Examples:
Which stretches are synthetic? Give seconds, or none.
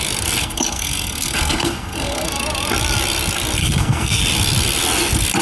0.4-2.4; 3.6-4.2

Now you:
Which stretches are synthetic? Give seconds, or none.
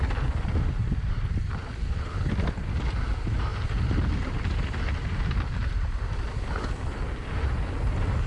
1.8-2.3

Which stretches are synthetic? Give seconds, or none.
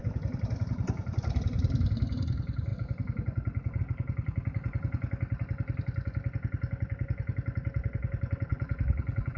8.5-9.4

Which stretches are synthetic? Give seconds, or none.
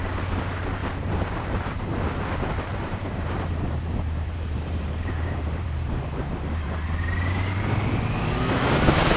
0.8-1.8; 2.7-5.9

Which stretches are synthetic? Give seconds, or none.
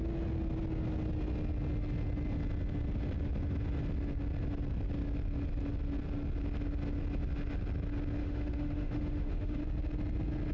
8.2-9.6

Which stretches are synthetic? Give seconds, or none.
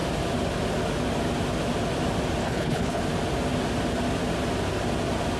2.4-3.0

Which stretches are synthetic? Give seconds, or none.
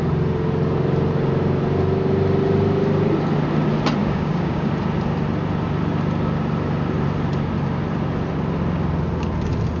4.0-4.7